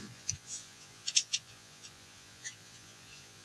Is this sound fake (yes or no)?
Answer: yes